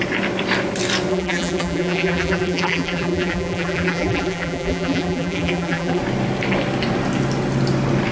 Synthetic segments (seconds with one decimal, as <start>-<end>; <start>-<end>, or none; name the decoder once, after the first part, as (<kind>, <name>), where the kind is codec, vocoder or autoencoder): 1.1-6.0 (vocoder, BigVGAN v2)